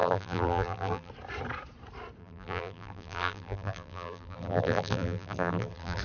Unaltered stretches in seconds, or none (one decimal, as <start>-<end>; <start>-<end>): 1.1-2.2